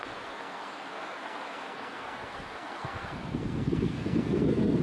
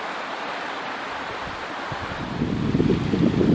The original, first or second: second